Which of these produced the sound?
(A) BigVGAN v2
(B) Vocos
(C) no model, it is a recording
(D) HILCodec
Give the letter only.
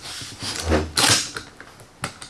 C